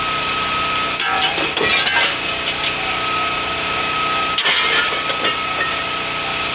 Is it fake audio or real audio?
real